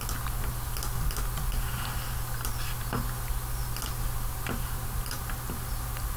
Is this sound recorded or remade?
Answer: recorded